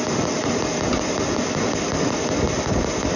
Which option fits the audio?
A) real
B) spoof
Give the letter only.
A